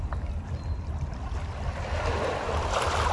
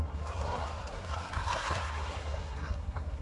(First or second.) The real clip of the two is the first